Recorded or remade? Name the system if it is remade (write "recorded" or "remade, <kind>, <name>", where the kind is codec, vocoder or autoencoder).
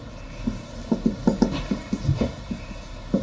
recorded